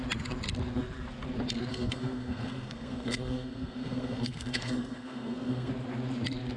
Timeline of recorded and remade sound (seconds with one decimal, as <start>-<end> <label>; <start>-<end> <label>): 0.0-1.7 recorded; 1.7-5.7 remade; 5.7-6.6 recorded